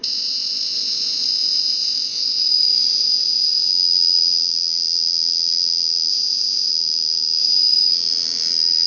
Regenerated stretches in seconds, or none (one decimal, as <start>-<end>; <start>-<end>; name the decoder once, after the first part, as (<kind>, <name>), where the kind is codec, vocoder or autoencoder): 0.0-3.7 (vocoder, Vocos); 6.1-6.7; 7.4-7.9

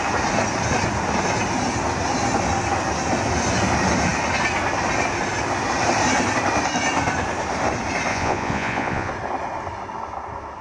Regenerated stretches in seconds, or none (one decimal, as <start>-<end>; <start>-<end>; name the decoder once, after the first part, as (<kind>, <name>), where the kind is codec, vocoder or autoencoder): 8.1-9.1 (vocoder, Vocos)

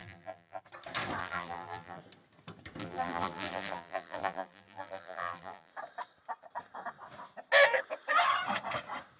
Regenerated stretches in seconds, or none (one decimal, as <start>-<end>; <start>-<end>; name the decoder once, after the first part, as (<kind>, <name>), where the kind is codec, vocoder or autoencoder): 0.0-0.6 (vocoder, BigVGAN v2); 1.2-2.0; 2.8-5.7

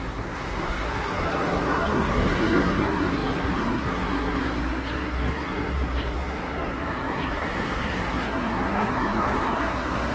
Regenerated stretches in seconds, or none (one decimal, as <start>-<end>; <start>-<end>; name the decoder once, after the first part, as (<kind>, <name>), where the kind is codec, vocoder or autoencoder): 0.0-10.1 (codec, SNAC)

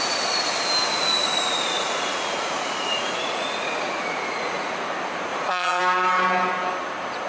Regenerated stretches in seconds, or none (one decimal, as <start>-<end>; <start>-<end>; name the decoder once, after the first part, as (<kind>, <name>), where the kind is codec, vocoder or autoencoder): 1.2-4.8 (vocoder, Vocos); 5.3-5.8

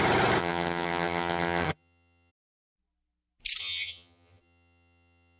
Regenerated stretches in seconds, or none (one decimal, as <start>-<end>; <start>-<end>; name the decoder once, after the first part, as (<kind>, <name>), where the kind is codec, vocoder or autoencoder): 0.4-2.3 (vocoder, HiFi-GAN); 3.6-5.4

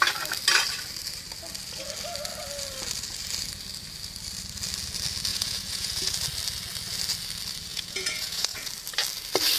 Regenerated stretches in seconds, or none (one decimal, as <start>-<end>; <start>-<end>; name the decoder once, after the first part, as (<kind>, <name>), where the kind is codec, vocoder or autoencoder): 5.3-6.1 (vocoder, Vocos); 7.7-8.7

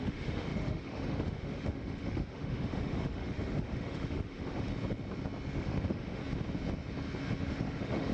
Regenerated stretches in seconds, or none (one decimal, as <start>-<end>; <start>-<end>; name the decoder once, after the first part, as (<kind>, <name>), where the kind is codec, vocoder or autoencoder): 0.0-4.7 (autoencoder, DAC-VAE); 5.5-6.2; 7.4-8.1